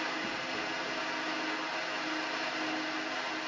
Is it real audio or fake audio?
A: real